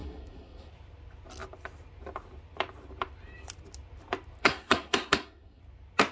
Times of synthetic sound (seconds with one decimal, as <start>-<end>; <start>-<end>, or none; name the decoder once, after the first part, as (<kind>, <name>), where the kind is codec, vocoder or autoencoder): 0.0-0.7 (codec, SNAC); 4.4-5.6